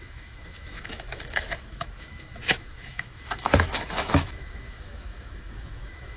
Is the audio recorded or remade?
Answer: remade